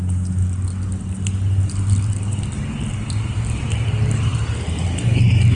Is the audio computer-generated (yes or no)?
yes